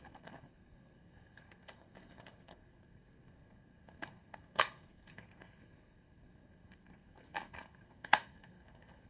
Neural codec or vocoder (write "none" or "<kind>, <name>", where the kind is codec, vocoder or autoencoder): codec, SNAC